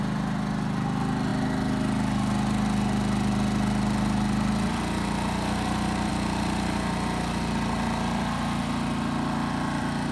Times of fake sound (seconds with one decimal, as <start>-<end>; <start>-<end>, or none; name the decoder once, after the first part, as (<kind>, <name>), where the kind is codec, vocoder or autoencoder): none